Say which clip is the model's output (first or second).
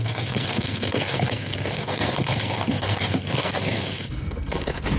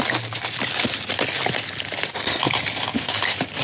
first